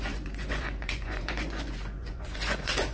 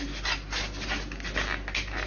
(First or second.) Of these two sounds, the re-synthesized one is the first